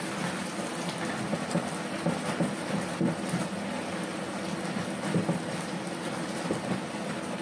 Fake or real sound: real